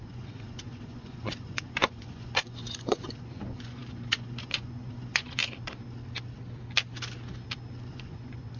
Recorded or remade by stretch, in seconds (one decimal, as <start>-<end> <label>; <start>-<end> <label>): 0.0-5.4 remade; 5.4-7.9 recorded; 7.9-8.6 remade